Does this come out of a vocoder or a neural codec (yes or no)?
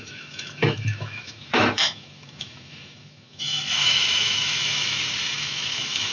yes